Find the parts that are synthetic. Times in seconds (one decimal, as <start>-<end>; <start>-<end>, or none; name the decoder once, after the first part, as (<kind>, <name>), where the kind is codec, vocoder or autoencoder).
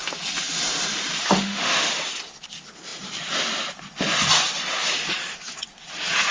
1.2-1.9 (autoencoder, DAC-VAE)